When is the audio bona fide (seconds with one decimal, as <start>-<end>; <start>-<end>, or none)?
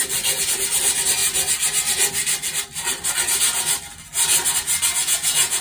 0.0-5.0